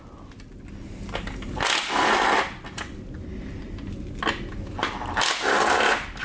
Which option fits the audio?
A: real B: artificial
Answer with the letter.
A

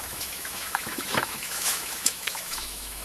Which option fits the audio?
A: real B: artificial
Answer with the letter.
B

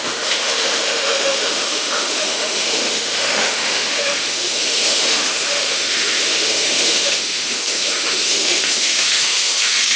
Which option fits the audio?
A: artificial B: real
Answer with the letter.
A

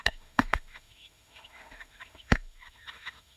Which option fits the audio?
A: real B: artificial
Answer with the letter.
B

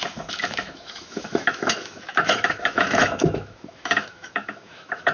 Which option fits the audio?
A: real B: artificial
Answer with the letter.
B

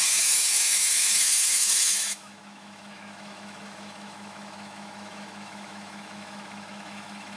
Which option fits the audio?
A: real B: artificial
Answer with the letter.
B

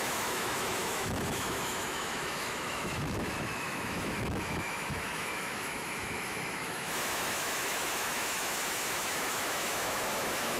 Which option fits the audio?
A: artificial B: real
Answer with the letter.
A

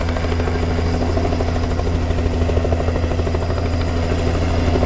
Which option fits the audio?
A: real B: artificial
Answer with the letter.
A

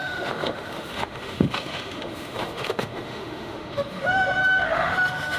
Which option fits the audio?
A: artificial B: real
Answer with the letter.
A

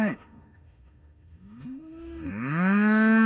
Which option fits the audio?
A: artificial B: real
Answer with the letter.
A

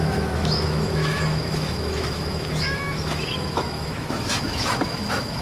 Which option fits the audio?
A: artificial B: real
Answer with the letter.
A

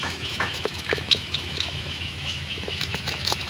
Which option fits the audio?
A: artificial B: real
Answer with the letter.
A